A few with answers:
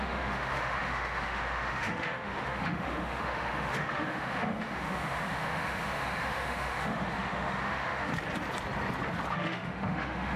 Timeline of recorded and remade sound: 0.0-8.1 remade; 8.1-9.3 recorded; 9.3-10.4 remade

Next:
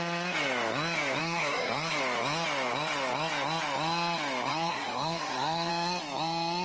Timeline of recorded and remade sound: 0.0-1.2 recorded; 1.2-2.0 remade; 2.0-4.5 recorded; 4.5-5.7 remade; 5.7-6.6 recorded

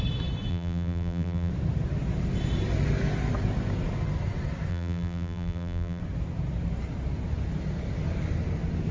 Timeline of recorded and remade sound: 0.0-0.5 recorded; 0.5-1.5 remade; 1.5-4.7 recorded; 4.7-6.0 remade; 6.0-8.9 recorded

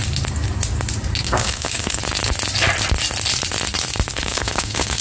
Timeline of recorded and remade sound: 0.0-1.2 recorded; 1.2-2.0 remade; 2.0-4.1 recorded; 4.1-5.0 remade

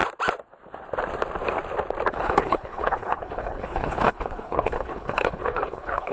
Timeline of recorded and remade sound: 0.0-2.1 recorded; 2.1-6.1 remade

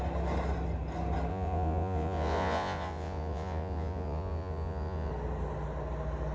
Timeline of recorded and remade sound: 0.0-1.3 recorded; 1.3-5.1 remade; 5.1-6.3 recorded